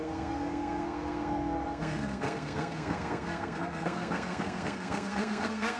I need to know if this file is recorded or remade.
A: remade